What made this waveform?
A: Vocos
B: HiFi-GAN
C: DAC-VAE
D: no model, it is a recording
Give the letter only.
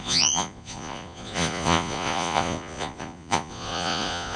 A